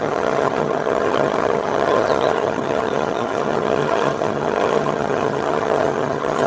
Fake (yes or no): yes